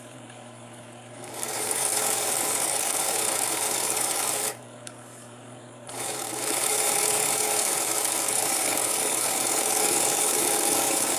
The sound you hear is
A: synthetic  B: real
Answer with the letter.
A